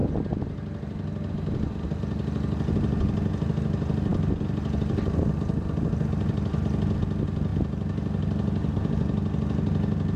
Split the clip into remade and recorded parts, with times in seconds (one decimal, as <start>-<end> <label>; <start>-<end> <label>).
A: 0.0-10.2 recorded